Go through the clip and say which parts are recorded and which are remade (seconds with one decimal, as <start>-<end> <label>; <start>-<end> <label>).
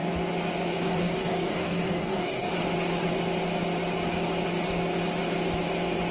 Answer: 0.0-0.8 recorded; 0.8-2.5 remade; 2.5-6.1 recorded